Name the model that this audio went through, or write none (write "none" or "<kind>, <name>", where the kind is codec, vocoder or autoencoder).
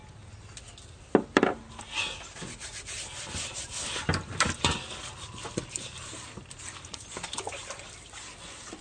none